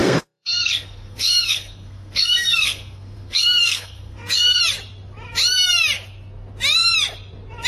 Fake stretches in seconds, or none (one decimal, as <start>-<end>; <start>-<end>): 0.0-4.6